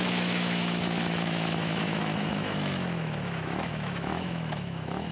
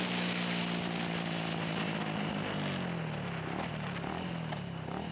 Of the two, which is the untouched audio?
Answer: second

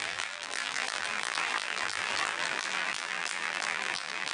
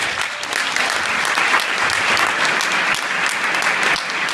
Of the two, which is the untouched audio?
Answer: second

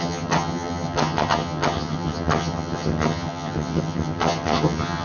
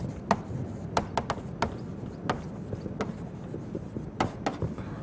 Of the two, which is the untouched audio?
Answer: second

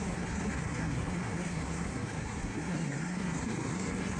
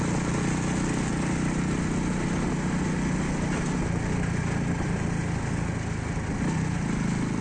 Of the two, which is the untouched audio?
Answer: second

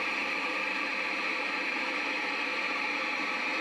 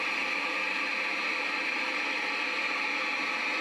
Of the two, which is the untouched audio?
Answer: second